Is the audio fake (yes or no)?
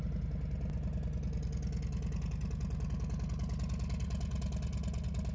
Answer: no